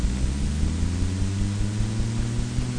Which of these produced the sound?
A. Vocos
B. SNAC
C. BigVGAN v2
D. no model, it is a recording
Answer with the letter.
D